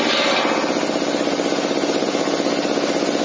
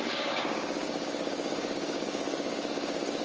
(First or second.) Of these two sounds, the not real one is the second